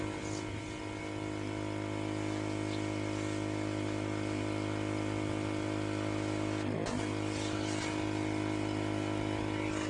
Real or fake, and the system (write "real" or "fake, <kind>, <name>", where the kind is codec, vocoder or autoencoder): real